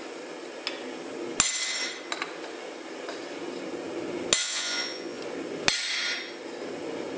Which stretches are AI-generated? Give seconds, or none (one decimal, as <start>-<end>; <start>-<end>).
4.4-5.2